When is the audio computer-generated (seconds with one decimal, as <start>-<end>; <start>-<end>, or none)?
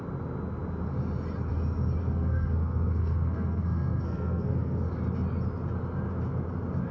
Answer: 2.0-5.0